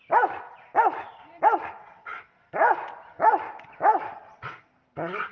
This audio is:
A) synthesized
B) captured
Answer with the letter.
B